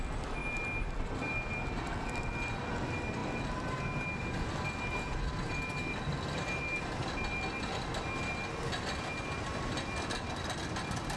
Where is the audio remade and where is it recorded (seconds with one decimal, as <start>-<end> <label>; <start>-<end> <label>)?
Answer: 0.0-11.2 recorded